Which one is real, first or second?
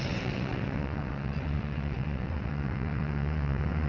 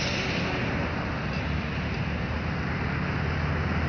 second